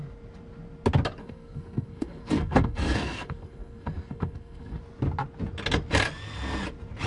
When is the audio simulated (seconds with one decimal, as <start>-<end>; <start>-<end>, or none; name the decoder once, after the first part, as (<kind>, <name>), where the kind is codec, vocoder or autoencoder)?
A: 1.2-4.8 (codec, SNAC)